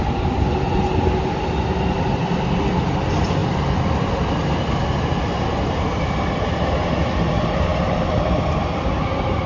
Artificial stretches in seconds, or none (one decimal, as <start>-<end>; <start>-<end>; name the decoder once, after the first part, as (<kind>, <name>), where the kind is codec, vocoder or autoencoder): none